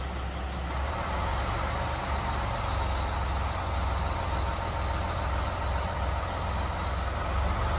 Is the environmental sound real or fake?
real